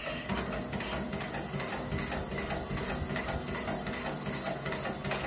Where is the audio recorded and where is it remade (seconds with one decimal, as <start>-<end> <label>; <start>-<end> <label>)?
0.0-5.3 recorded